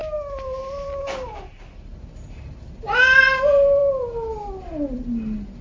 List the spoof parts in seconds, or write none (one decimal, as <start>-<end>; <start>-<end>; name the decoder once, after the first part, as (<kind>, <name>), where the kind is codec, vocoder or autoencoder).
3.4-3.8 (vocoder, Vocos)